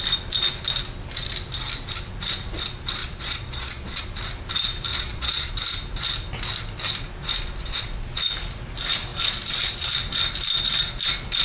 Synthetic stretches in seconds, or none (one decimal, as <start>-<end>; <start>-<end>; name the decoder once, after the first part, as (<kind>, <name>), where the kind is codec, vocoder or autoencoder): 3.0-4.0 (vocoder, Vocos); 4.9-5.5; 7.6-8.2